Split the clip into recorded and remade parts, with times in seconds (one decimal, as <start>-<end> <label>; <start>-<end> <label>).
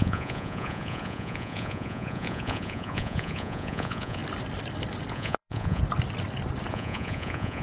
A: 0.0-4.2 remade; 4.2-5.1 recorded; 5.1-5.8 remade; 5.8-6.7 recorded; 6.7-7.6 remade